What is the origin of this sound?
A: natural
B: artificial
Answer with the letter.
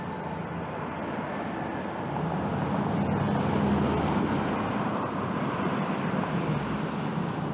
A